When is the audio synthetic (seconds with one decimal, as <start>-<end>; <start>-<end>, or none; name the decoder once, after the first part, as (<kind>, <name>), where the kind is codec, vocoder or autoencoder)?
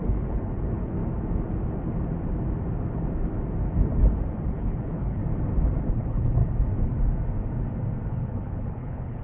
0.0-1.0 (codec, HILCodec); 4.5-5.2; 5.9-6.4; 8.1-9.2